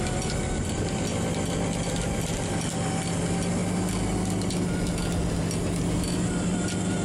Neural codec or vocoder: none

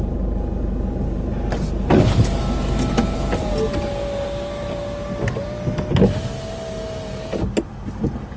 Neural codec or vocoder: none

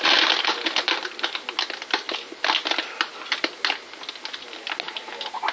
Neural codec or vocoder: none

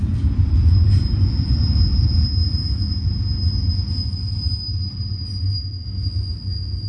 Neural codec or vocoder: none